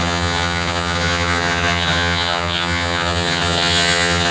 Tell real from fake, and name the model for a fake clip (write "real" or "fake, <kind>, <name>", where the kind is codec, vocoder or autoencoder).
fake, vocoder, HiFi-GAN